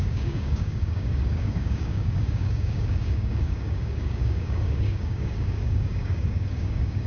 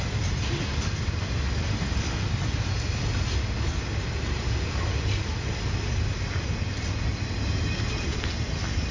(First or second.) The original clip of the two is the second